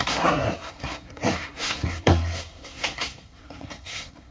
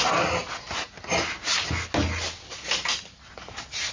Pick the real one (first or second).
second